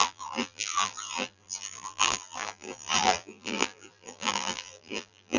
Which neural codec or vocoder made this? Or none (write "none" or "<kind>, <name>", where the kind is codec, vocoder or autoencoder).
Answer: vocoder, BigVGAN v2